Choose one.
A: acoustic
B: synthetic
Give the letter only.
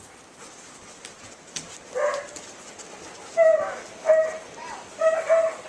A